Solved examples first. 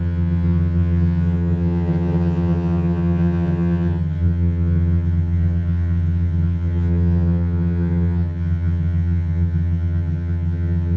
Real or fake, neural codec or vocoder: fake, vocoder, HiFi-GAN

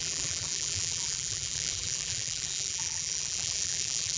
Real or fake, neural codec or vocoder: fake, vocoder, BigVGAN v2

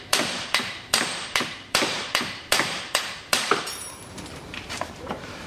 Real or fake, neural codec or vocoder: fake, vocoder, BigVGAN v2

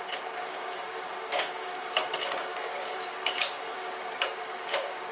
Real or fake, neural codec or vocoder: fake, codec, DAC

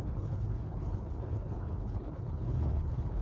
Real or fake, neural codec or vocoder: fake, codec, HILCodec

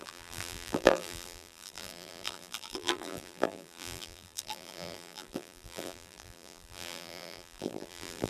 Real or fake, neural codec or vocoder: fake, vocoder, BigVGAN v2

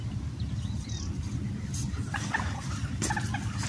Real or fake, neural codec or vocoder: real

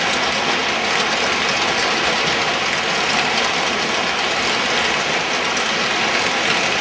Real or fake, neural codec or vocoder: real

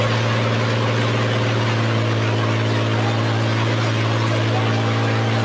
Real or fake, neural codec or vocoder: real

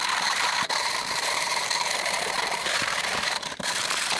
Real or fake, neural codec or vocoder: fake, vocoder, BigVGAN v2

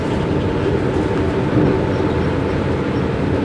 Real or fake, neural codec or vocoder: real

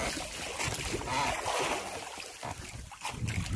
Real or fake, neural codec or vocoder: real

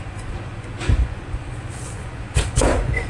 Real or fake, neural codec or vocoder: fake, vocoder, Vocos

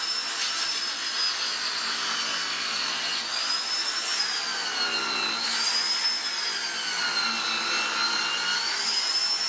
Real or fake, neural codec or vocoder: real